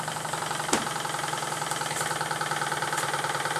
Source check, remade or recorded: recorded